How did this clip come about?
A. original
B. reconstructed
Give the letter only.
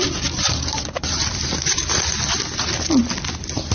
B